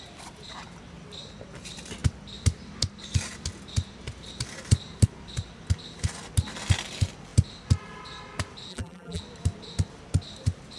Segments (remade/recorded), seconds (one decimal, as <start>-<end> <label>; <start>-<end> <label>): 0.0-8.7 recorded; 8.7-9.2 remade; 9.2-10.8 recorded